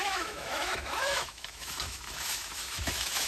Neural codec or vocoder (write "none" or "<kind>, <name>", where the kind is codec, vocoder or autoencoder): autoencoder, DAC-VAE